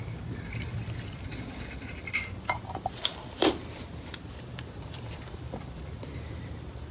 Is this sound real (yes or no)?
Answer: no